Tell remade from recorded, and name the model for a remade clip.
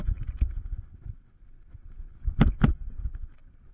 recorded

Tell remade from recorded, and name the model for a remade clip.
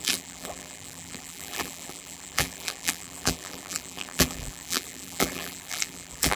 remade, vocoder, BigVGAN v2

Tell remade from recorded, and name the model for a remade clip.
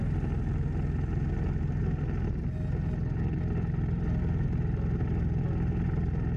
recorded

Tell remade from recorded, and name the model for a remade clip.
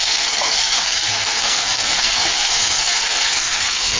remade, codec, SNAC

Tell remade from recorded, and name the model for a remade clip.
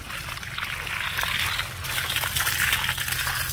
recorded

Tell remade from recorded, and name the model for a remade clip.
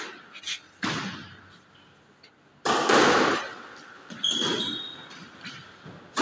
recorded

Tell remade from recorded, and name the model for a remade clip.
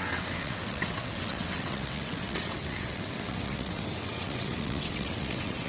remade, vocoder, WaveNeXt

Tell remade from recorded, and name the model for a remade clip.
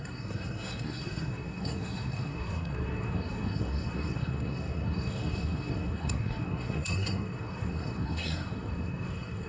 remade, codec, SNAC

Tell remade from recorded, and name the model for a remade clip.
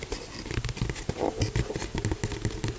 recorded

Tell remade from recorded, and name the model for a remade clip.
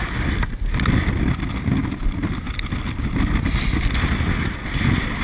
recorded